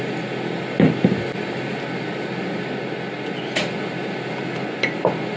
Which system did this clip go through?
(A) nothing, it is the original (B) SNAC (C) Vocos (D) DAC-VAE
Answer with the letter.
A